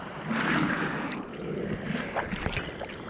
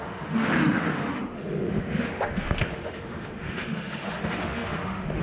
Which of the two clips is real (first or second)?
first